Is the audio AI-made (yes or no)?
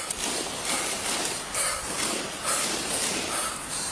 yes